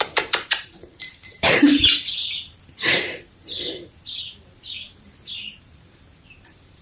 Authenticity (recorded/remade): remade